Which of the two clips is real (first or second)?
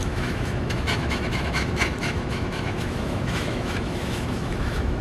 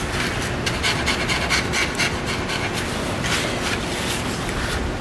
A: second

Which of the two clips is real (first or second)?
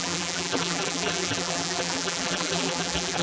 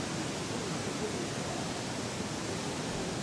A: second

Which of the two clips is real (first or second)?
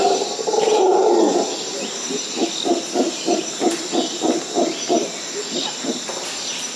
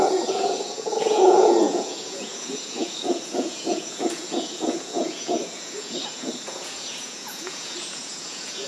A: first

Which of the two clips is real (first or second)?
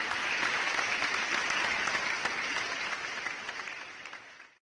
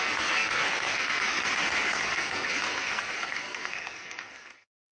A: first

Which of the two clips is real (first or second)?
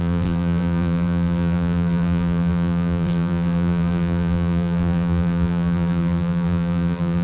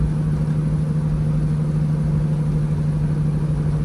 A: second